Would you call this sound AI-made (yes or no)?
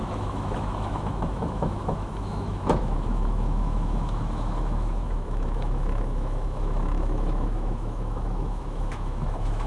yes